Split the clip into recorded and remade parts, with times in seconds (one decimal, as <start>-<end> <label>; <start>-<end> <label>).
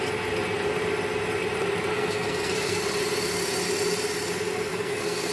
0.0-1.9 recorded; 1.9-2.8 remade; 2.8-4.7 recorded; 4.7-5.3 remade